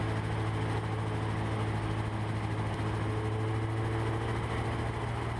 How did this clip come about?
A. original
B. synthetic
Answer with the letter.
A